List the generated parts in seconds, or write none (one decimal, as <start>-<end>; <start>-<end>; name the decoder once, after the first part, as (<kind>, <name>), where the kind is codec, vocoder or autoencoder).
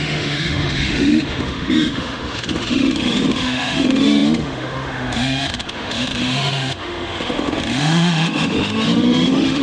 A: 0.0-9.6 (autoencoder, DAC-VAE)